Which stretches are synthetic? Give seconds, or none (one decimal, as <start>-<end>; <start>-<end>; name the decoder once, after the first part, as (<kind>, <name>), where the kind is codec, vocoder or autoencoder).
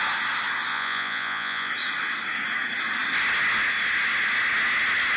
0.7-1.7 (vocoder, Vocos)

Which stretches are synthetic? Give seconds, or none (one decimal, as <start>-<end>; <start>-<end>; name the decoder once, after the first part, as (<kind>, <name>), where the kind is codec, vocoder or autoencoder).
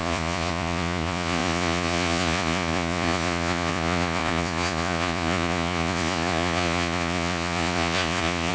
0.0-8.5 (vocoder, Vocos)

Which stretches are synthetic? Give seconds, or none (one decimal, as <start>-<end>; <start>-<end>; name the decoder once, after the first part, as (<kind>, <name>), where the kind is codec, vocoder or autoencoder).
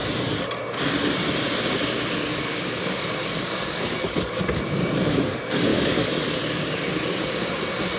2.3-4.4 (codec, DAC); 5.7-7.2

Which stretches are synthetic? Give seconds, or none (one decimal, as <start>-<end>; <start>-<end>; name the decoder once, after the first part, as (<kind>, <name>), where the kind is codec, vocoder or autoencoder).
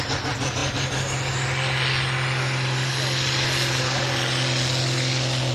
none